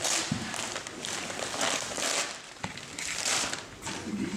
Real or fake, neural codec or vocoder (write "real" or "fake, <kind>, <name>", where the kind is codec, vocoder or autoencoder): real